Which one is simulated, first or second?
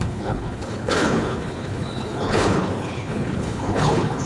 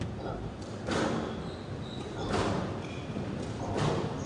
first